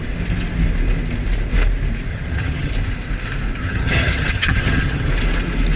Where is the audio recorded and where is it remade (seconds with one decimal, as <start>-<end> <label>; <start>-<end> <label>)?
0.0-2.1 recorded; 2.1-2.7 remade; 2.7-3.6 recorded; 3.6-5.1 remade; 5.1-5.8 recorded